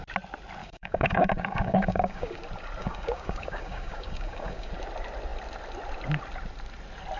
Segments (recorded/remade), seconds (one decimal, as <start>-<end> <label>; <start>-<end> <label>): 0.0-0.6 recorded; 0.6-2.4 remade; 2.4-2.8 recorded; 2.8-4.7 remade; 4.7-7.2 recorded